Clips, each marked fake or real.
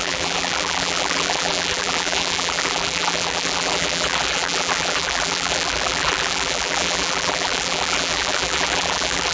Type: fake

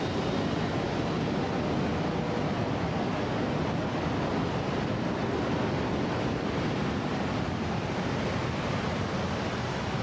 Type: real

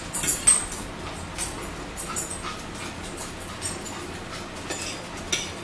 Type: real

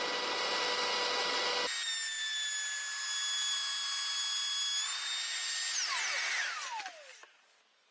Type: real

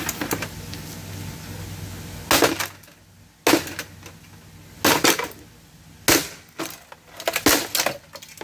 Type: real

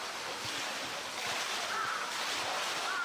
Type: real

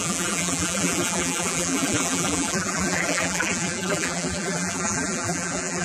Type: fake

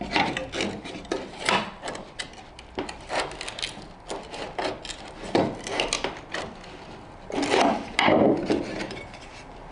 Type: real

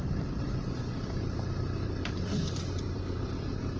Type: fake